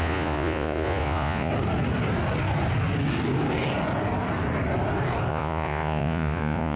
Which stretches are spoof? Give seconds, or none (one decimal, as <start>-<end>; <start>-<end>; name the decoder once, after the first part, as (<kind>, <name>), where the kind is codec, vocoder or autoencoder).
0.0-1.5 (vocoder, Vocos); 5.3-6.8